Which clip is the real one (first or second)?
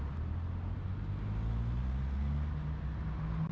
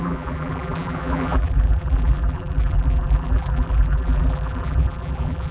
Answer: first